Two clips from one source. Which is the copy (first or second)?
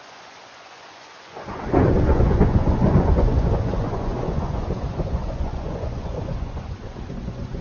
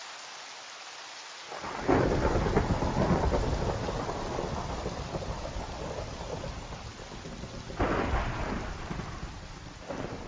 first